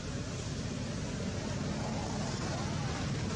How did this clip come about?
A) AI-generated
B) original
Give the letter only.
B